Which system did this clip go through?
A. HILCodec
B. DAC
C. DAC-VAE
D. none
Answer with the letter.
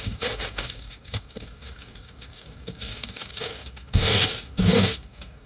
B